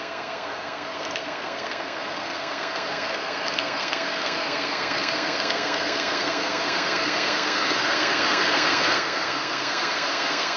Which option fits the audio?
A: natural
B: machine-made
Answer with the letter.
B